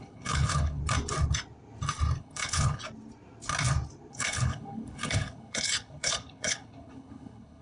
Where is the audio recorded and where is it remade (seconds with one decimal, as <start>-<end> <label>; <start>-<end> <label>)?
0.0-0.8 remade; 0.8-2.2 recorded; 2.2-2.8 remade; 2.8-4.1 recorded; 4.1-7.6 remade